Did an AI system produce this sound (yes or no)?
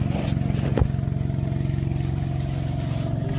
no